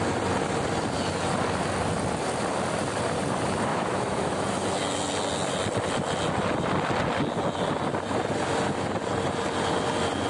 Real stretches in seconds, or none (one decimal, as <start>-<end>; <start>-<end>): 0.0-3.7; 4.4-10.3